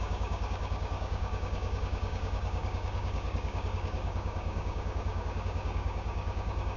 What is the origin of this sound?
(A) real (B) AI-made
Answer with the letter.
B